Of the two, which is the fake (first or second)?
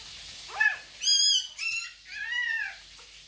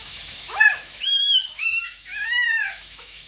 second